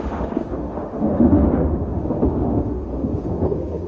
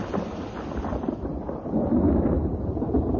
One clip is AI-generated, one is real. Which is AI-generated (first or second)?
first